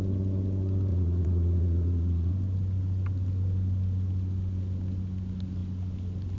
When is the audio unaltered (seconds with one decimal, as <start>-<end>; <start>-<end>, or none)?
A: 0.0-0.9; 2.3-6.4